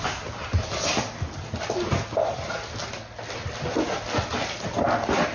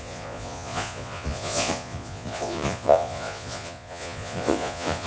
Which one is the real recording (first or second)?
first